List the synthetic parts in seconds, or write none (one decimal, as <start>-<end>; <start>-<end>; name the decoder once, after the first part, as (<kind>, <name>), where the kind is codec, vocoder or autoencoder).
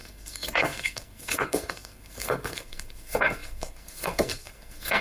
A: 0.0-5.0 (codec, SNAC)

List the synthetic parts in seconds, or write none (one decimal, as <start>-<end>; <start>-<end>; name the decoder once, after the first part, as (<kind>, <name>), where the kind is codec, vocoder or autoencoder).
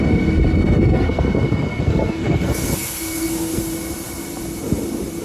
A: 0.6-3.6 (codec, SNAC)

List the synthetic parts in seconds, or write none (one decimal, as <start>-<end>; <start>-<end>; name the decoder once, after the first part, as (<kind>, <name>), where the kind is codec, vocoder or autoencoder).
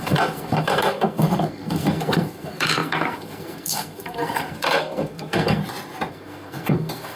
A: 0.0-5.6 (codec, SNAC); 6.1-7.2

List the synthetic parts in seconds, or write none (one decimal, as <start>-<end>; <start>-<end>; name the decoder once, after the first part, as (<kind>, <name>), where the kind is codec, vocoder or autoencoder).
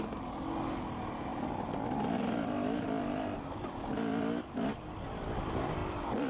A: none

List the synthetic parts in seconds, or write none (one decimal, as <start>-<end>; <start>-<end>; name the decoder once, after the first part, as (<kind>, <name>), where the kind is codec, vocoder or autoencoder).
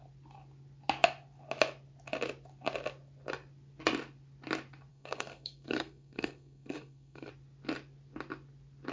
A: 4.9-7.3 (codec, SNAC)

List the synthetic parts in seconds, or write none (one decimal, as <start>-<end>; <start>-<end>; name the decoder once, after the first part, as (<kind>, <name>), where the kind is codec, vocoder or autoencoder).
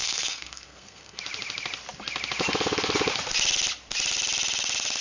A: 0.0-1.2 (codec, SNAC)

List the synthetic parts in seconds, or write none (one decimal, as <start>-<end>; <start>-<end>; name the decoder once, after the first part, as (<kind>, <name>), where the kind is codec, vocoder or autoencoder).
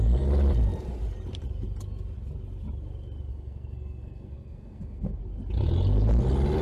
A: 3.3-5.2 (codec, SNAC)